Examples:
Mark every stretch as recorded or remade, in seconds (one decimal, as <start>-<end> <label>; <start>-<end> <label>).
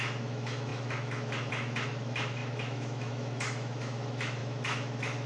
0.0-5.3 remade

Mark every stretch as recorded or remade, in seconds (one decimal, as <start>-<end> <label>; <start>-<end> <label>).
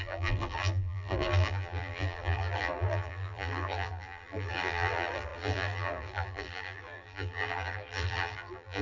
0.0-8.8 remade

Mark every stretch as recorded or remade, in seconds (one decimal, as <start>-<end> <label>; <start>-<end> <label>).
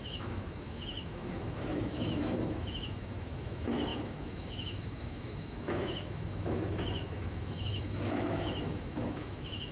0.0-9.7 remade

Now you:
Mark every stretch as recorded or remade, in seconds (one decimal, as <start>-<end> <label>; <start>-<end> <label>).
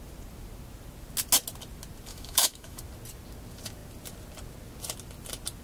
0.0-2.1 recorded; 2.1-2.8 remade; 2.8-5.6 recorded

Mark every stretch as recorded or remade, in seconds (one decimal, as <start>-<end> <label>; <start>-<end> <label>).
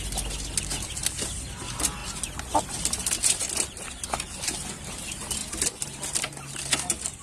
0.0-7.2 recorded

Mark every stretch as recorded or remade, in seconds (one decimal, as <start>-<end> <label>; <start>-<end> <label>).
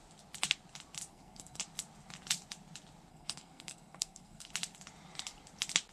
0.0-1.1 recorded; 1.1-1.6 remade; 1.6-3.1 recorded; 3.1-4.5 remade; 4.5-5.9 recorded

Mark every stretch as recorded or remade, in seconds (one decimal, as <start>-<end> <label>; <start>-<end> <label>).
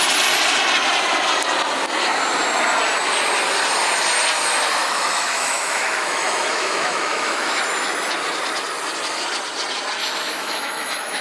0.0-4.8 recorded; 4.8-8.1 remade; 8.1-10.0 recorded; 10.0-11.2 remade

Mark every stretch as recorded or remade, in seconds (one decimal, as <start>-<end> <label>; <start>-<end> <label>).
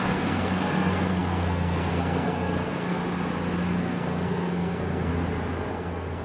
0.0-3.0 remade; 3.0-3.8 recorded; 3.8-5.1 remade; 5.1-5.7 recorded; 5.7-6.2 remade